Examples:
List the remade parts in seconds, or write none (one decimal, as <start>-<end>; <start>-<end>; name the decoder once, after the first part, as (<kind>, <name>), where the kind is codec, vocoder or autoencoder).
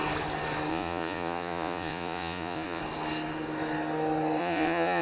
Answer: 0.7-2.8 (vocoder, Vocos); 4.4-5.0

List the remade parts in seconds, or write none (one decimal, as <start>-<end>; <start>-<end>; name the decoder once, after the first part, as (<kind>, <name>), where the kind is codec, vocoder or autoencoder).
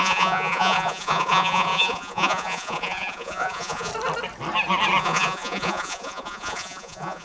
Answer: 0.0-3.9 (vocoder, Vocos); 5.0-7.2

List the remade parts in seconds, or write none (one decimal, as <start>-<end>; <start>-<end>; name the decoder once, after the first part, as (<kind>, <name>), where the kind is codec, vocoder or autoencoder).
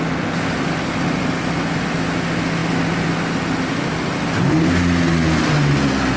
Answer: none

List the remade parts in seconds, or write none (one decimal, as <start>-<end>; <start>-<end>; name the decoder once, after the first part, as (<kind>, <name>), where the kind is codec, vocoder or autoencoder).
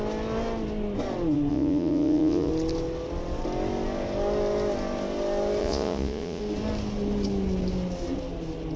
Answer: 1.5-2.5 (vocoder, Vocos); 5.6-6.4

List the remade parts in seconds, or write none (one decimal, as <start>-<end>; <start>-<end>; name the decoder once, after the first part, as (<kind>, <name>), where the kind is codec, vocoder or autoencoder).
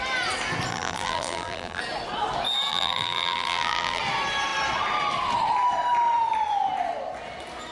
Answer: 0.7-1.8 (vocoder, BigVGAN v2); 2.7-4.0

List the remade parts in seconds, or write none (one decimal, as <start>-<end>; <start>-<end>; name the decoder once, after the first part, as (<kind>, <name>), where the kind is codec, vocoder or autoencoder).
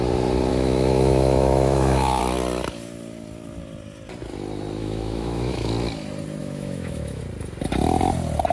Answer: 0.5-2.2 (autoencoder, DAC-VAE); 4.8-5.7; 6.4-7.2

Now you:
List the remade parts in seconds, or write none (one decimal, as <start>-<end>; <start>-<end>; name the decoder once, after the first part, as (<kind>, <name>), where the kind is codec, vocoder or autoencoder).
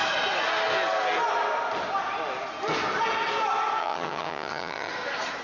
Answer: 3.8-4.9 (vocoder, HiFi-GAN)